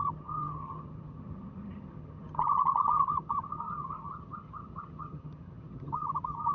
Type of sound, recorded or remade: remade